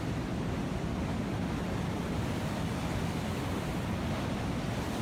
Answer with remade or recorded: recorded